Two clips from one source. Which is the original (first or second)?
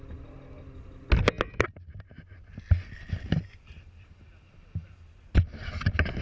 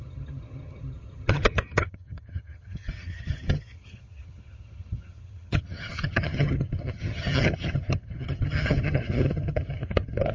first